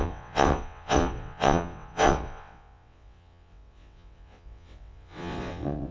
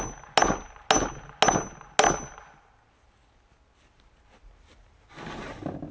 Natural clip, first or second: second